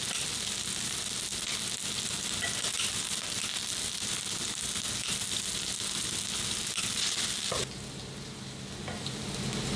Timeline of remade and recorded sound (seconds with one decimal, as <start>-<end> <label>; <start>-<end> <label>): 0.0-9.8 recorded